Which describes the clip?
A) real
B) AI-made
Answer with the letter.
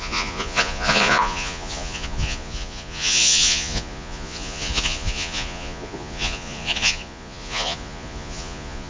B